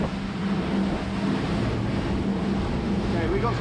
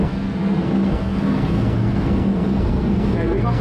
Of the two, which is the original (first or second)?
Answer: first